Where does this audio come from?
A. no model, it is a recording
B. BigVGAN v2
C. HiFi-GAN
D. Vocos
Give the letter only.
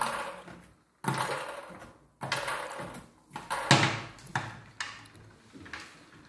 A